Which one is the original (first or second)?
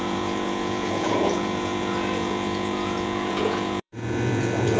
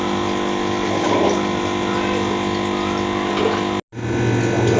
second